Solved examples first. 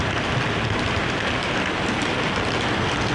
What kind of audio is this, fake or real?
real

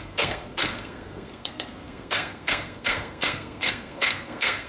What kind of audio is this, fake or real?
fake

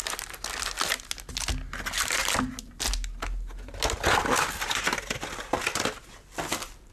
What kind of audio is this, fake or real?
real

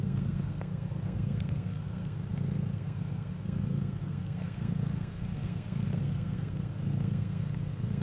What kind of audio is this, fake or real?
fake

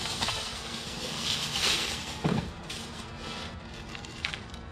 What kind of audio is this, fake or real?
fake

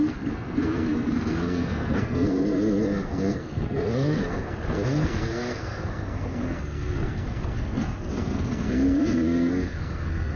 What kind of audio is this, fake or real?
fake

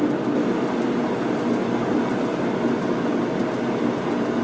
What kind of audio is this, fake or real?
real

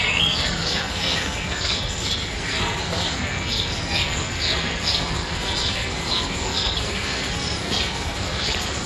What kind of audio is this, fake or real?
fake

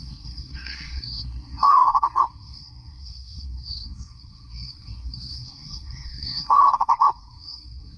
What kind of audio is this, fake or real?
fake